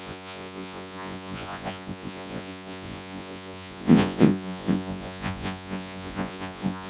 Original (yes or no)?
no